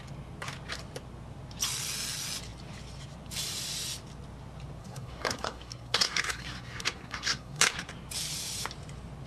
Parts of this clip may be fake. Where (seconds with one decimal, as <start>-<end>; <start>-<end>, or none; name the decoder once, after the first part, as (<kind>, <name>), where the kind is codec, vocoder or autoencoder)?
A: 4.8-7.9 (codec, SNAC)